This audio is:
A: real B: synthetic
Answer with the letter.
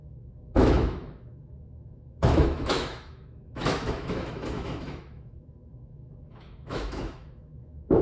B